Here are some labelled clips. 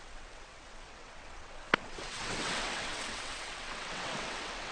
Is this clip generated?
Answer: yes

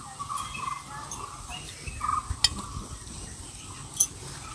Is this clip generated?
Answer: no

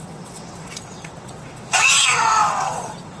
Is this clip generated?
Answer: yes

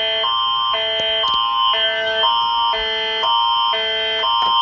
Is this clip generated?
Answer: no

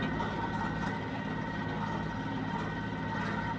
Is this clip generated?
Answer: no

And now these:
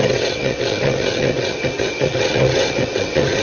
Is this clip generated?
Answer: yes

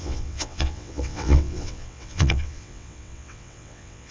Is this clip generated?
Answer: yes